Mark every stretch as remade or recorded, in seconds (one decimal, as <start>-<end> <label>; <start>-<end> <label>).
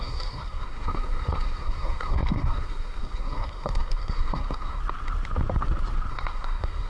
0.0-4.8 remade; 4.8-6.1 recorded; 6.1-6.9 remade